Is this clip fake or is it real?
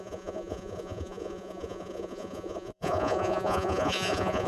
fake